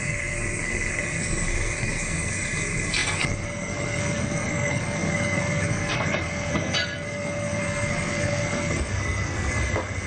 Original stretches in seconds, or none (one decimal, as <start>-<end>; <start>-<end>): none